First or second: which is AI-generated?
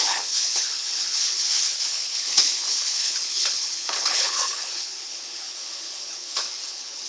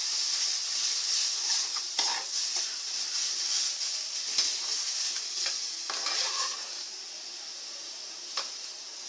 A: first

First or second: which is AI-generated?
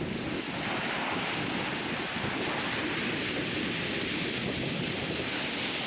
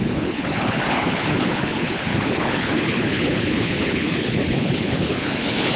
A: second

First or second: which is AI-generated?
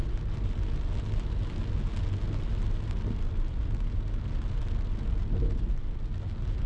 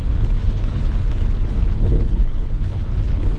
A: second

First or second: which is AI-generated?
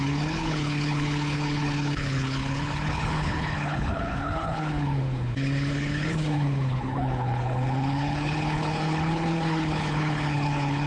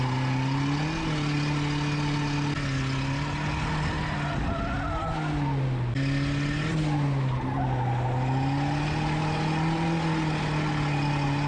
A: first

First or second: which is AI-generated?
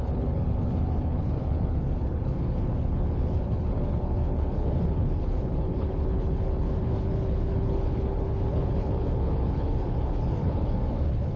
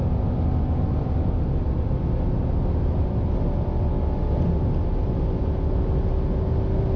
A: first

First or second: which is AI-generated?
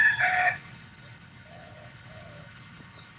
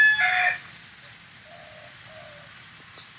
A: first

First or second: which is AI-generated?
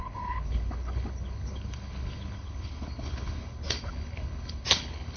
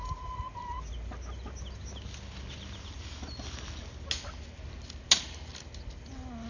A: first